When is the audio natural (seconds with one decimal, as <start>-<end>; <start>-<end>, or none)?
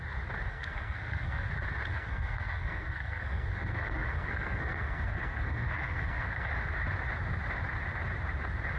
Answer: 0.0-0.5; 1.5-1.9; 6.5-8.8